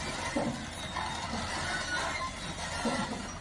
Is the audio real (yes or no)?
yes